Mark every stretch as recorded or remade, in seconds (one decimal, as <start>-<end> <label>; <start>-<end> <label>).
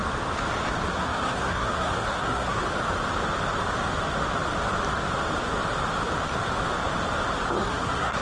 0.0-0.9 recorded; 0.9-2.6 remade; 2.6-7.5 recorded; 7.5-8.2 remade